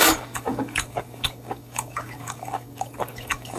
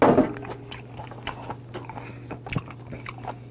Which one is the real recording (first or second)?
second